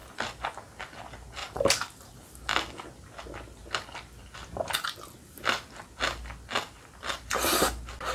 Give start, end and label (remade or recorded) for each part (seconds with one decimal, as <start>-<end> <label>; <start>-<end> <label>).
0.0-1.4 recorded; 1.4-2.1 remade; 2.1-8.1 recorded